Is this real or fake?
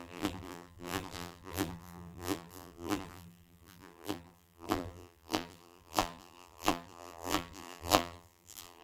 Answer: fake